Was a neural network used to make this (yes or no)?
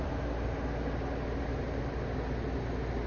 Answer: no